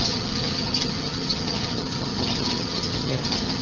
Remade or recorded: remade